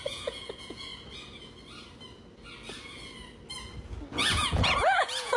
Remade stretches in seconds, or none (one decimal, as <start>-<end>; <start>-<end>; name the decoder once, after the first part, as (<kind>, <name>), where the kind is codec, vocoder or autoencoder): 0.0-0.9 (vocoder, Vocos); 4.1-5.4

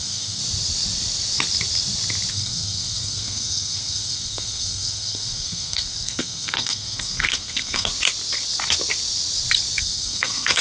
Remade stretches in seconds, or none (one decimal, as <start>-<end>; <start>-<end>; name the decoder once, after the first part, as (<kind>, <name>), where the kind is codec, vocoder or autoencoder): 0.0-0.4 (codec, SNAC); 2.3-7.9; 9.8-10.6